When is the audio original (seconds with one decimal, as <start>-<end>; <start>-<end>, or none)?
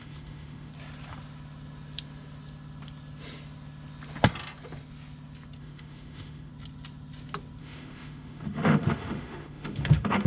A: 0.7-5.6; 6.5-7.6